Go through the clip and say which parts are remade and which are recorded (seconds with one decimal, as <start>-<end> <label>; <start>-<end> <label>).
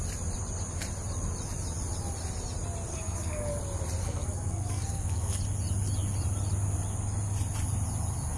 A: 0.0-2.9 recorded; 2.9-3.6 remade; 3.6-4.0 recorded; 4.0-5.4 remade; 5.4-8.4 recorded